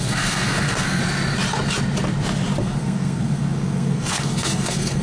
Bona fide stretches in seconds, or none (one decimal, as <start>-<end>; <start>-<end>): 1.0-2.6